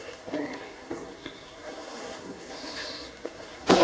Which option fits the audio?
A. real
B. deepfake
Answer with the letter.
B